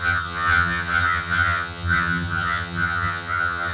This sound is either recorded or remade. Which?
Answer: remade